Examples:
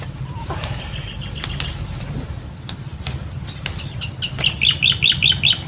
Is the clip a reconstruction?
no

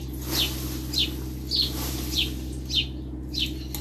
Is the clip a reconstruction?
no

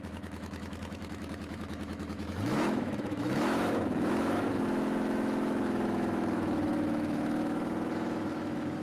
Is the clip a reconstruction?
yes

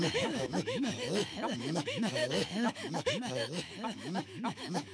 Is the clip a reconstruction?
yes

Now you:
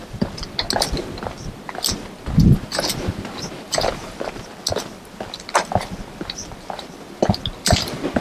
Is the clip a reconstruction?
no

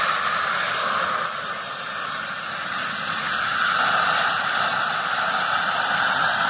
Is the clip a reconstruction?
no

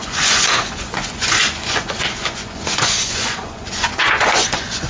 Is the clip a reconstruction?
yes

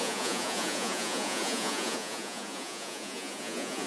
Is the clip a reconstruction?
yes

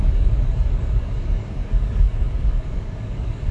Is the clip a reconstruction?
yes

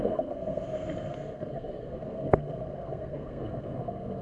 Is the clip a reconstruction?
yes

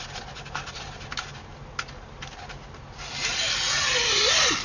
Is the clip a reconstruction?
no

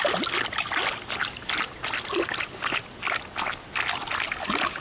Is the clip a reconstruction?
no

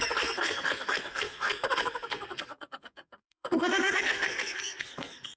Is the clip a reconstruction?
yes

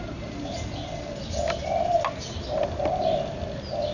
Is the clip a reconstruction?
no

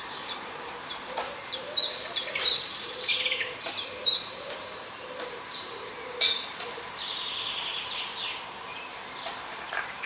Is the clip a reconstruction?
yes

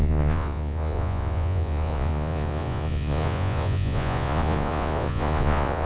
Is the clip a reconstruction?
yes